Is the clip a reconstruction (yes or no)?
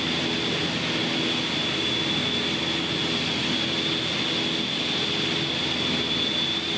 no